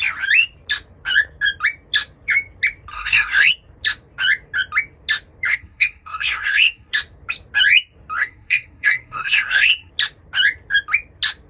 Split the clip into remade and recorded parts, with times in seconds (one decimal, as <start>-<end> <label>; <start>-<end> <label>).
0.0-2.9 recorded; 2.9-3.5 remade; 3.5-5.5 recorded; 5.5-6.9 remade; 6.9-8.2 recorded; 8.2-9.9 remade; 9.9-11.5 recorded